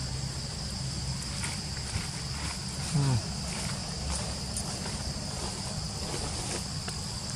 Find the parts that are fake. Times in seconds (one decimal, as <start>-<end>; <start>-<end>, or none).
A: 3.8-4.4